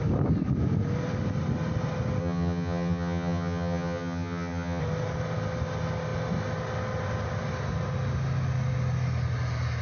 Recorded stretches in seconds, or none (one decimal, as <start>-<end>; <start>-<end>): 0.0-2.2; 4.8-9.8